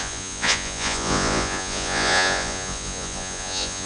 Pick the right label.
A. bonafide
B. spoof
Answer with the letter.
B